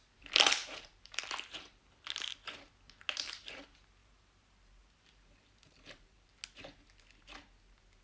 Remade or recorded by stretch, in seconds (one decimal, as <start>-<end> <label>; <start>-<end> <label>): 0.0-0.6 recorded; 0.6-1.2 remade; 1.2-4.0 recorded; 4.0-6.3 remade; 6.3-8.0 recorded

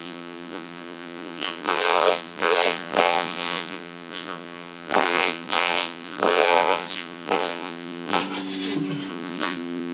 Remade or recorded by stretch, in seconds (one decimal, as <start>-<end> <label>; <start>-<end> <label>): 0.0-8.2 remade; 8.2-9.1 recorded; 9.1-9.9 remade

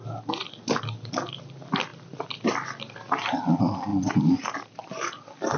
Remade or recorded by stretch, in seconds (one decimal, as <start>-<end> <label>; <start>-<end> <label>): 0.0-5.6 recorded

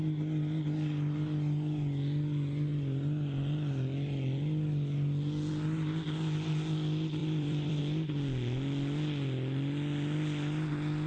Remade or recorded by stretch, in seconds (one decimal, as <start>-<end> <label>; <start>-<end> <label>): 0.0-7.2 recorded; 7.2-7.8 remade; 7.8-11.1 recorded

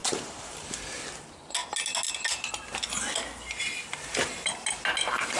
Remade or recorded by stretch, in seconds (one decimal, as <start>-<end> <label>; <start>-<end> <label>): 0.0-0.6 remade; 0.6-5.4 recorded

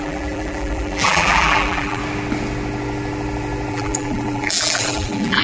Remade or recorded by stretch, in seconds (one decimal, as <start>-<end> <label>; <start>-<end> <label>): 0.0-2.0 remade; 2.0-3.7 recorded; 3.7-5.4 remade

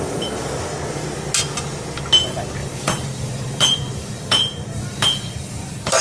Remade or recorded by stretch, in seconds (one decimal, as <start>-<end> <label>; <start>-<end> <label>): 0.0-2.6 recorded; 2.6-6.0 remade